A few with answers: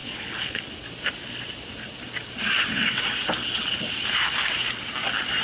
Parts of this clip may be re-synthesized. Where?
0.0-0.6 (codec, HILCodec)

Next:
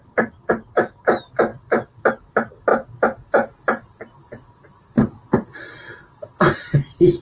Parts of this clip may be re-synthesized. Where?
none

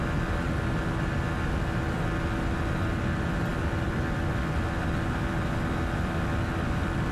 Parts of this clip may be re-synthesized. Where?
3.5-5.5 (vocoder, BigVGAN v2)

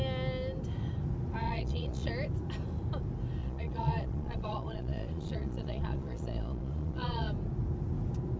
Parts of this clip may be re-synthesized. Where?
1.4-2.1 (vocoder, Vocos); 3.4-7.3

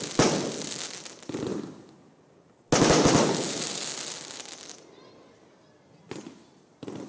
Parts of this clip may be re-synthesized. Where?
none

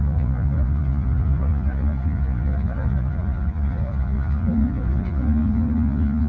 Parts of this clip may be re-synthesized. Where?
0.0-6.3 (vocoder, Vocos)